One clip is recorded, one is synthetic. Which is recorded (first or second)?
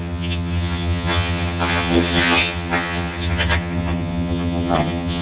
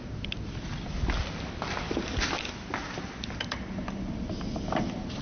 second